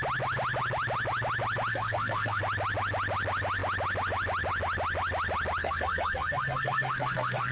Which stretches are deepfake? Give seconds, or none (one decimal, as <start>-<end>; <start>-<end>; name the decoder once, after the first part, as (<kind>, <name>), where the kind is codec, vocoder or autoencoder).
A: 1.7-2.4 (codec, SNAC); 5.6-7.5